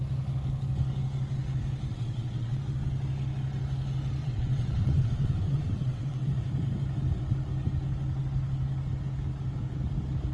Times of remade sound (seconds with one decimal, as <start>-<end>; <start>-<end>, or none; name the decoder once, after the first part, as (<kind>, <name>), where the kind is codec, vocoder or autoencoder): 1.9-2.6 (vocoder, WaveNeXt); 4.2-6.3